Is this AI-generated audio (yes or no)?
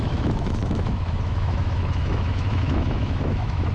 yes